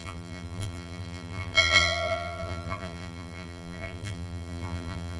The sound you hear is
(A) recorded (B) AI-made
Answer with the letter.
B